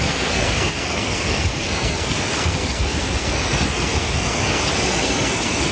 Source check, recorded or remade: remade